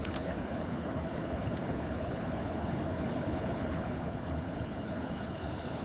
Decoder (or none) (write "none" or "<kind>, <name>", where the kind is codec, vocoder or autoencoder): codec, HILCodec